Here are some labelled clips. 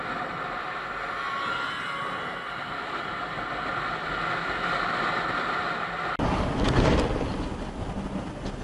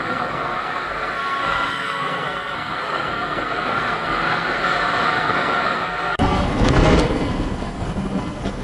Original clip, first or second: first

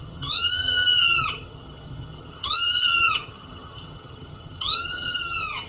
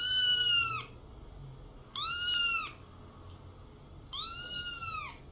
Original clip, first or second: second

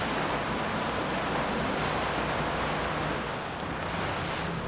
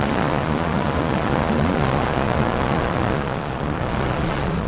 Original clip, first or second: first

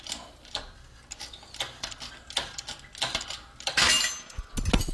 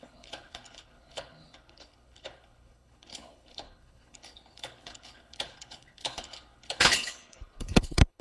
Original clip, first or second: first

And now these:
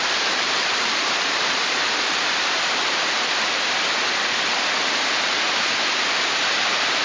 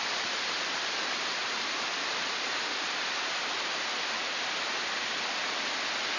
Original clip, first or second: second